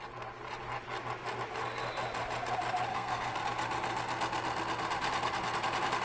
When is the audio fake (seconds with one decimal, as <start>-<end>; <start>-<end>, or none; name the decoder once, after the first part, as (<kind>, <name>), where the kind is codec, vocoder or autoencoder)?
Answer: 2.9-3.4 (codec, SNAC)